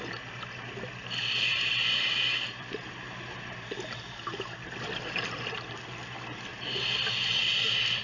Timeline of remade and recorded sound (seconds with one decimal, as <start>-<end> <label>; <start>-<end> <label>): 0.0-8.0 recorded